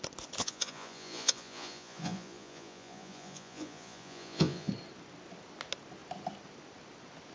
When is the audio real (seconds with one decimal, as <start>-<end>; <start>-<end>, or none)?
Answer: 0.0-0.4; 4.7-7.3